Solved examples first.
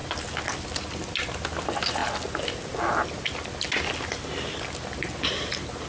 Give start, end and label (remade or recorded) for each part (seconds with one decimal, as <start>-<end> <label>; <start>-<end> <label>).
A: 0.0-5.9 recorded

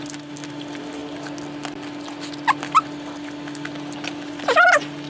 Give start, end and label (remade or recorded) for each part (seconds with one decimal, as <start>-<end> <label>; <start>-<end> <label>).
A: 0.0-5.1 recorded

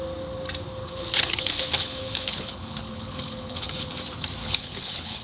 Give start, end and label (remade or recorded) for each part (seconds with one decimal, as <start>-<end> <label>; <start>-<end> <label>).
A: 0.0-0.8 recorded; 0.8-3.9 remade; 3.9-4.4 recorded; 4.4-5.2 remade

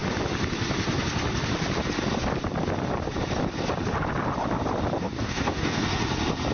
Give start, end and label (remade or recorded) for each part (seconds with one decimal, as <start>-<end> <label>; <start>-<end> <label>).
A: 0.0-5.0 recorded; 5.0-5.8 remade; 5.8-6.5 recorded

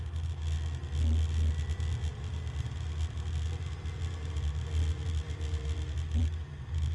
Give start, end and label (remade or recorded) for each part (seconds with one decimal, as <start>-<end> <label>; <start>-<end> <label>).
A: 0.0-6.9 recorded

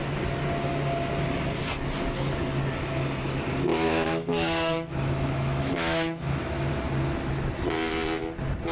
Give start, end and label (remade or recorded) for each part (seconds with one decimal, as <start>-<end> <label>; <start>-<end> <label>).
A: 0.0-3.7 recorded; 3.7-6.7 remade; 6.7-8.7 recorded

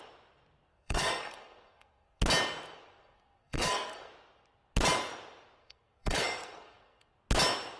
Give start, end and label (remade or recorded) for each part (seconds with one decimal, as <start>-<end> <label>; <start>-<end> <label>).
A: 0.0-0.7 recorded; 0.7-2.2 remade; 2.2-3.0 recorded; 3.0-4.1 remade; 4.1-5.6 recorded; 5.6-7.1 remade; 7.1-7.8 recorded